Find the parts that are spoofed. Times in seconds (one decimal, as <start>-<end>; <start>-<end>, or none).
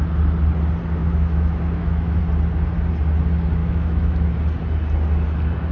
1.0-2.2; 3.6-4.3